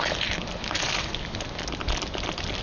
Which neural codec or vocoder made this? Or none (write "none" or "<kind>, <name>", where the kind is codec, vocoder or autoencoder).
none